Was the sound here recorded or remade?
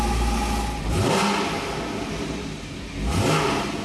recorded